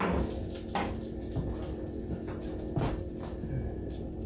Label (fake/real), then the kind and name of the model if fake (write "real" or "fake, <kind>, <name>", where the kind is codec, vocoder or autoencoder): real